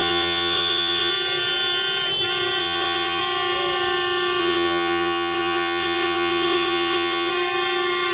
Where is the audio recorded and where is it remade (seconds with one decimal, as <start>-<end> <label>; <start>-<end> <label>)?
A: 0.0-1.1 remade; 1.1-2.6 recorded; 2.6-3.2 remade; 3.2-4.4 recorded; 4.4-7.3 remade; 7.3-8.1 recorded